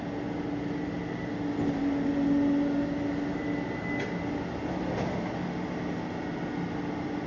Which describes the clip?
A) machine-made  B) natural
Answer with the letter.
B